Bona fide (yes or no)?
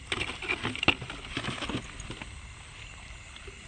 yes